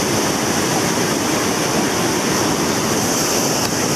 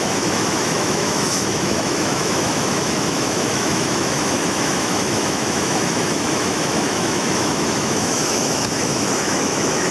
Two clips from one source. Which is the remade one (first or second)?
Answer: second